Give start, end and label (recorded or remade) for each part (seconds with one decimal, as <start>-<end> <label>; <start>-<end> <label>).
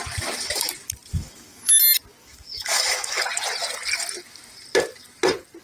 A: 0.0-1.1 recorded; 1.1-1.7 remade; 1.7-2.2 recorded; 2.2-3.2 remade; 3.2-5.6 recorded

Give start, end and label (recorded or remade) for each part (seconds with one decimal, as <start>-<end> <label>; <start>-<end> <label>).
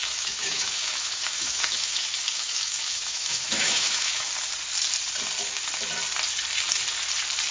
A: 0.0-4.3 remade; 4.3-7.5 recorded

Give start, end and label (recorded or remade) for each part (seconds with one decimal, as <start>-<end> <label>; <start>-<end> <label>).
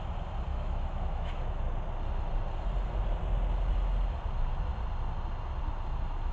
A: 0.0-0.5 recorded; 0.5-1.6 remade; 1.6-6.3 recorded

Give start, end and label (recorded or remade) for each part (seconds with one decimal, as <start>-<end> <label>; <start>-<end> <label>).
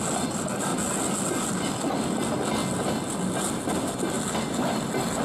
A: 0.0-5.2 recorded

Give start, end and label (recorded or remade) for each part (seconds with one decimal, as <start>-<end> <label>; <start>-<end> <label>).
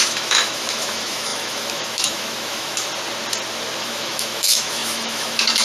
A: 0.0-2.9 remade; 2.9-3.8 recorded; 3.8-5.6 remade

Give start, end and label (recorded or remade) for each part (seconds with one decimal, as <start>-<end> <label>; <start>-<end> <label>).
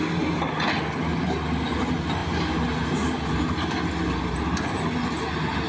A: 0.0-5.7 recorded